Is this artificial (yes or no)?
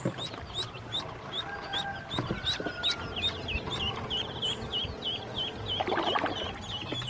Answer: no